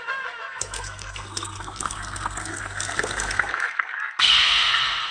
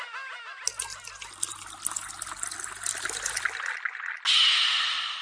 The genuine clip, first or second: second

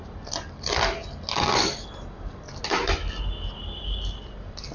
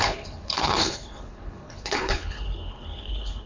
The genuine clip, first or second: first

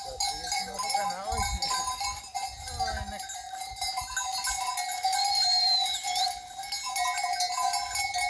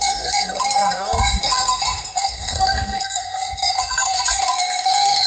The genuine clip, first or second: first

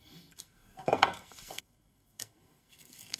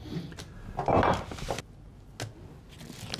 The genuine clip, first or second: second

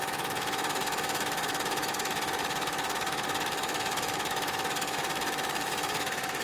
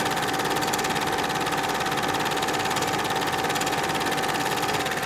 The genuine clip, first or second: second